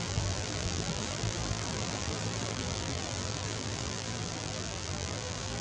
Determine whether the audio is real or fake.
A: fake